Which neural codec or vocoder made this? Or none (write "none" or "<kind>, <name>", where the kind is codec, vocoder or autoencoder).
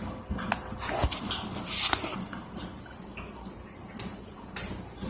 none